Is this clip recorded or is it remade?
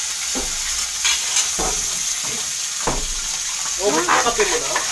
recorded